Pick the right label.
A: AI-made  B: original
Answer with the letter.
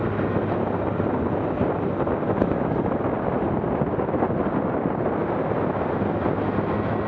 B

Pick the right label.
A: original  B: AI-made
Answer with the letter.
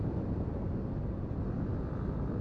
A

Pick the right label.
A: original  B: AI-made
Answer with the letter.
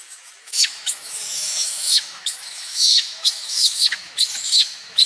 B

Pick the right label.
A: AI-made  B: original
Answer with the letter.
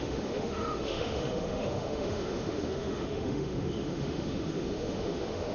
A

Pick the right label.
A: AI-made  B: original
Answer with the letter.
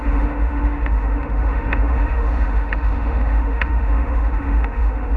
A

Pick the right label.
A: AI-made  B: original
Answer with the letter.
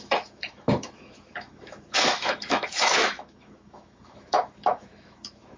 A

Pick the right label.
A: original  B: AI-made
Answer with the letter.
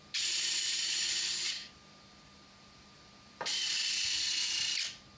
A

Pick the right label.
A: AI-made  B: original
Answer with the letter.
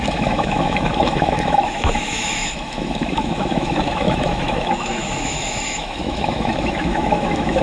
A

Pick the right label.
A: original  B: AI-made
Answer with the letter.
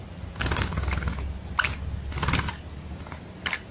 A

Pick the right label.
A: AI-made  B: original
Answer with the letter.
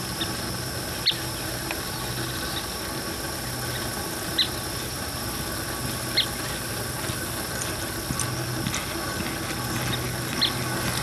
B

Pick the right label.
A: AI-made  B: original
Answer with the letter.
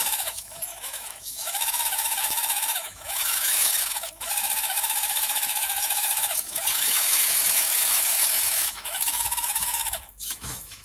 A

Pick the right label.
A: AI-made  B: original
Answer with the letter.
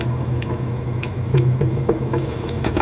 A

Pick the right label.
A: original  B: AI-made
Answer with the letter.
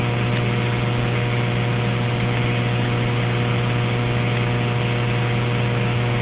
A